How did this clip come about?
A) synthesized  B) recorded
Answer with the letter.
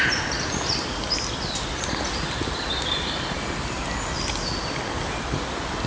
B